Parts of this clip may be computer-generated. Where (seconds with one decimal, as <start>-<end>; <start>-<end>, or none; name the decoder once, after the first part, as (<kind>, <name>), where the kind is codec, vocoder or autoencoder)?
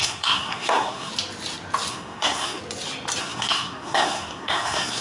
0.0-1.1 (codec, SNAC); 1.9-2.6; 3.2-5.0